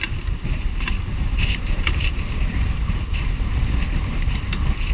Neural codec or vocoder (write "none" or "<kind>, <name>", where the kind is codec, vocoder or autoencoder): vocoder, BigVGAN v2